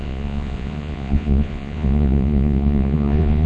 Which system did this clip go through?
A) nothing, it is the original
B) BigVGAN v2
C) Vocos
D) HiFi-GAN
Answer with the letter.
C